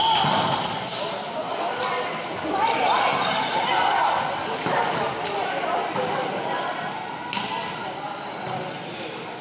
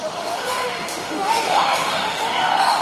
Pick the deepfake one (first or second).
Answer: second